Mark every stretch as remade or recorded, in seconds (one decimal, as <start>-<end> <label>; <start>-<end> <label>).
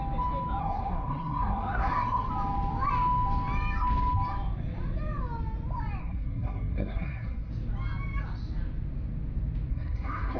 0.0-0.6 recorded; 0.6-2.3 remade; 2.3-6.0 recorded; 6.0-7.5 remade; 7.5-9.7 recorded; 9.7-10.4 remade